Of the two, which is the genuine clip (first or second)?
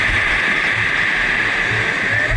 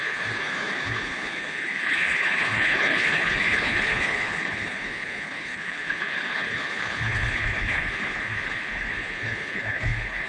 first